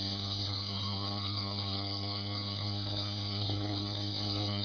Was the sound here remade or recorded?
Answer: remade